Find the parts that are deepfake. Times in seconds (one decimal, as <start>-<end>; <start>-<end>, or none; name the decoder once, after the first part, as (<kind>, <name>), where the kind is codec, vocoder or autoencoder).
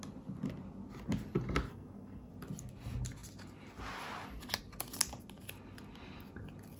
1.7-2.3 (codec, SNAC)